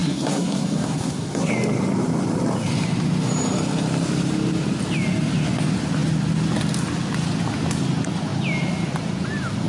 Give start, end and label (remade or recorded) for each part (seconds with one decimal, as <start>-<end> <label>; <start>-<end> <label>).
0.0-1.5 remade; 1.5-9.7 recorded